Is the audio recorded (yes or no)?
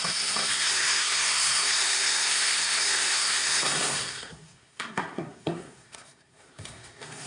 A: no